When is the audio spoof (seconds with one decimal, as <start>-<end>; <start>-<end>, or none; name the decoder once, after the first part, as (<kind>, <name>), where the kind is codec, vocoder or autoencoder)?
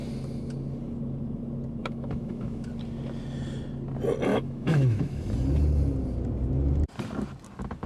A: 1.8-2.7 (autoencoder, DAC-VAE); 4.3-5.2